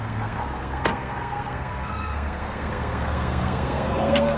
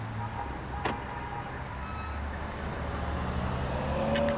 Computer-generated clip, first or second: first